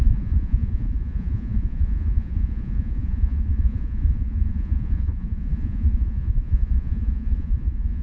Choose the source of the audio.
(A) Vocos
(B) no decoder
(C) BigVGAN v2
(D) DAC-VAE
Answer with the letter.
A